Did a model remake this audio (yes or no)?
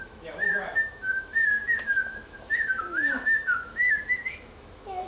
yes